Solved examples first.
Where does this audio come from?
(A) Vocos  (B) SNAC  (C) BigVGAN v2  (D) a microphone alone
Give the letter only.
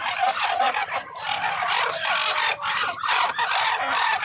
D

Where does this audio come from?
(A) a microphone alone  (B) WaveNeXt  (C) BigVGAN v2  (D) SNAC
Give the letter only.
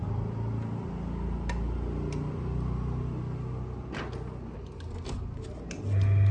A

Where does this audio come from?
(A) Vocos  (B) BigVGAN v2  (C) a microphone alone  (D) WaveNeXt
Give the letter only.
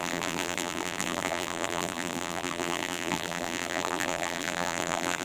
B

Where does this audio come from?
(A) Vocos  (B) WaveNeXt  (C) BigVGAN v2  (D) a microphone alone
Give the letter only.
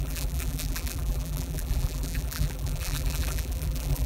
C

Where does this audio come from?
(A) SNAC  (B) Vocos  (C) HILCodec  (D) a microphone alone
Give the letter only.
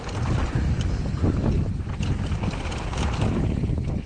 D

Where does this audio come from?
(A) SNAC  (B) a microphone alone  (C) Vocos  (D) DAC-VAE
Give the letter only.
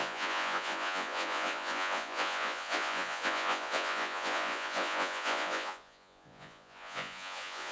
C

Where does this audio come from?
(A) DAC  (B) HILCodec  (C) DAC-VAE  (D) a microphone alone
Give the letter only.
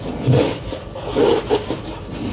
D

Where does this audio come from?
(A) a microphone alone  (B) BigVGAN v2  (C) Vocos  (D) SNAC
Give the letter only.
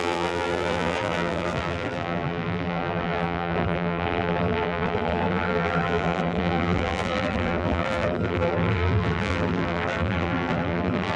B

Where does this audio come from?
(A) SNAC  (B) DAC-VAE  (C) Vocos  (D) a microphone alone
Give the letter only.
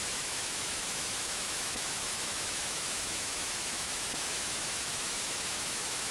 B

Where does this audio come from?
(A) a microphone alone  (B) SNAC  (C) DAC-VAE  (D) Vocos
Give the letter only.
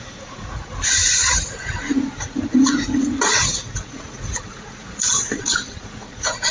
D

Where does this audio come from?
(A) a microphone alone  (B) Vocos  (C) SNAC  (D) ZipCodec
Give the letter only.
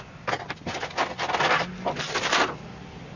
A